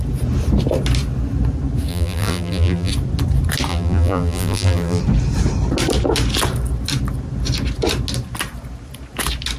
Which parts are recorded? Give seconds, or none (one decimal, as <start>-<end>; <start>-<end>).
0.0-1.9; 2.9-3.7; 5.0-9.6